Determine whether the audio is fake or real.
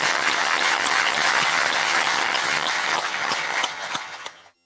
fake